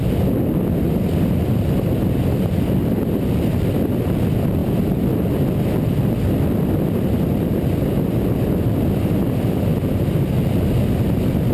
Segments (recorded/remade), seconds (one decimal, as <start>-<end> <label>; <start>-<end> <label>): 0.0-11.5 recorded